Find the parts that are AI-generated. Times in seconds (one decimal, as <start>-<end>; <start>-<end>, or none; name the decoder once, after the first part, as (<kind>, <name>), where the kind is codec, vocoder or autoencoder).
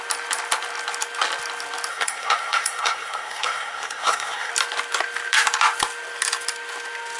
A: 1.9-4.5 (codec, SNAC)